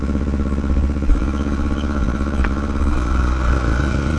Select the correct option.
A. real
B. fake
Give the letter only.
B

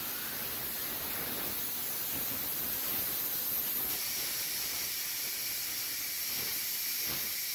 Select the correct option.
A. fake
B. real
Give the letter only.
B